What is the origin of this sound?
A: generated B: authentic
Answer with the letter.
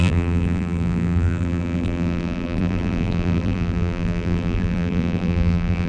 A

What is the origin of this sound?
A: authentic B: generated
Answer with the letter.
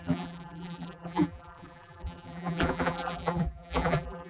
B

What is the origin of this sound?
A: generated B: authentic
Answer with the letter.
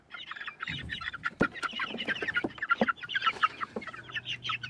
A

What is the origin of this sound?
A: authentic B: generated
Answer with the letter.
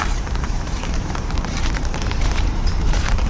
B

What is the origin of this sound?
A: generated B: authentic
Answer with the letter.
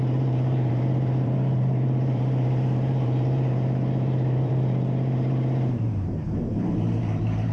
A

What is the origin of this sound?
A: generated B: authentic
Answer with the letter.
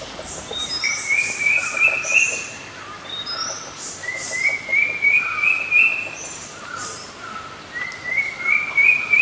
A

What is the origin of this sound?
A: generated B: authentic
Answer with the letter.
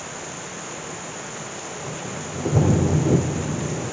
B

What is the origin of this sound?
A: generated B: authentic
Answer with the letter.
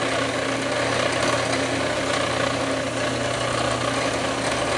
B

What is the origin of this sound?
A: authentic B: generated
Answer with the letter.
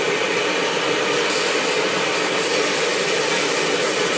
B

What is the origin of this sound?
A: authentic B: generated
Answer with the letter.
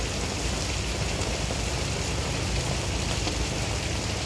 A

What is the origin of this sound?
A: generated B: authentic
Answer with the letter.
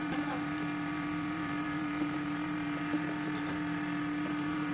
A